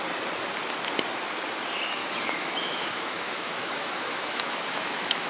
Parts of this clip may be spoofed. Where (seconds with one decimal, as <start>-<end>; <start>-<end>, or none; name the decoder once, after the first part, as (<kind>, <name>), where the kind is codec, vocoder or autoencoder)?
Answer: 2.0-5.3 (autoencoder, DAC-VAE)